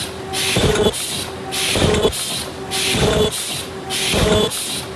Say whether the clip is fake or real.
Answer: real